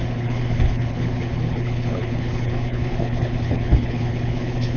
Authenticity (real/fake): fake